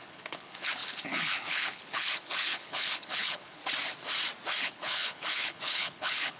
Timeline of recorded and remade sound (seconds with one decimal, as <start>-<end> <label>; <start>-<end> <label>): 0.0-3.6 remade; 3.6-4.6 recorded; 4.6-6.4 remade